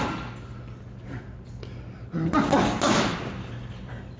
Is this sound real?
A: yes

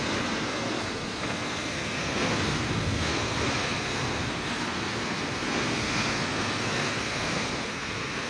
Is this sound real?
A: no